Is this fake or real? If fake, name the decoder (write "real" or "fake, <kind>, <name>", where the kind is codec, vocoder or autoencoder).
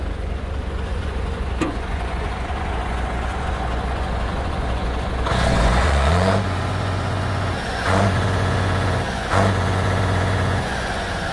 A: fake, vocoder, Vocos